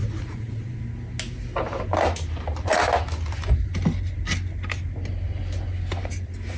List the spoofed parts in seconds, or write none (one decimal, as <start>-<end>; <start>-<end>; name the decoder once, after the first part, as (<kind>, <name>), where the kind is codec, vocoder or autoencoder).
0.0-0.8 (vocoder, Vocos)